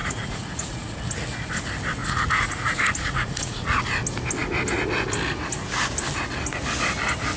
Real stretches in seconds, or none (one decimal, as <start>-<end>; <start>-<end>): 1.0-2.0; 3.8-7.4